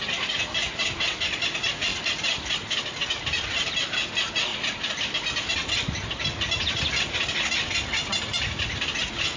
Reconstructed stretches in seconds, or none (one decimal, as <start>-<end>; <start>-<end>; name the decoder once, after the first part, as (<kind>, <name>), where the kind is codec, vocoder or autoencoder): none